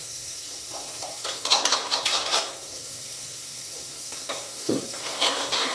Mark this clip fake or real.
fake